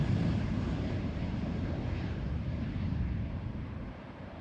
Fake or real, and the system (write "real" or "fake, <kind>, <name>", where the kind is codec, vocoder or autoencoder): fake, vocoder, BigVGAN v2